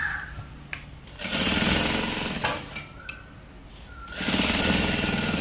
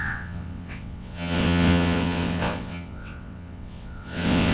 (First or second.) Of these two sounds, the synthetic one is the second